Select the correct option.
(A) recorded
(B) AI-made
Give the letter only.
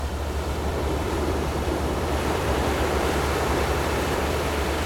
B